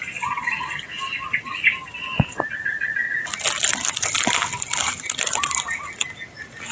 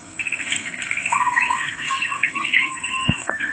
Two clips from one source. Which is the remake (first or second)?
second